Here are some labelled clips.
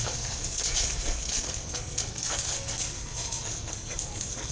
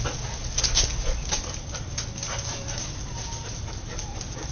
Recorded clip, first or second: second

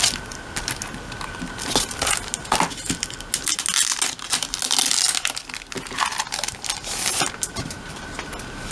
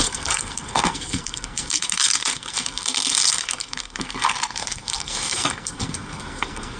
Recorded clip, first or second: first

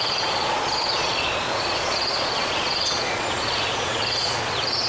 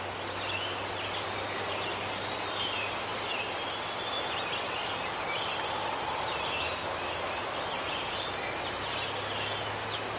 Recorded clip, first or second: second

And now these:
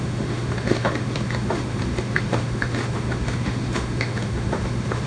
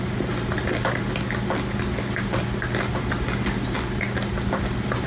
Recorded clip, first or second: second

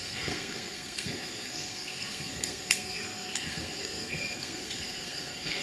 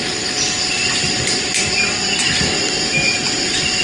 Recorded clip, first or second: second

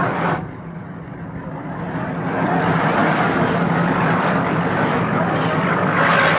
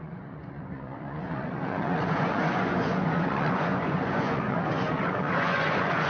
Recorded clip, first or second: first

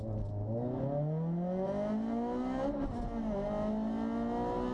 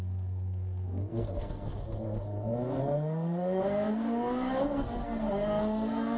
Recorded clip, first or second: first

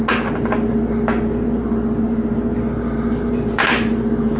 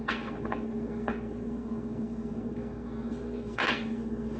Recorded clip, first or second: first